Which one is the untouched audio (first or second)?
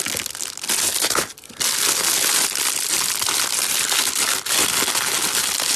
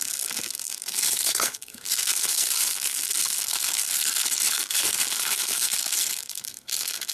first